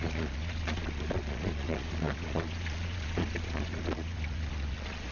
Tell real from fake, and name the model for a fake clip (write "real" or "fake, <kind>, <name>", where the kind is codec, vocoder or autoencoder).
fake, vocoder, Vocos